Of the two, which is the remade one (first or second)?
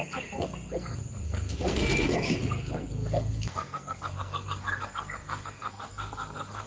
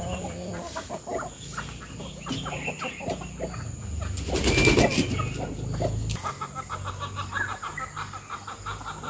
first